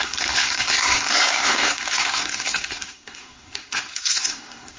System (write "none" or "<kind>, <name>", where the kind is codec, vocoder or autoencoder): codec, SNAC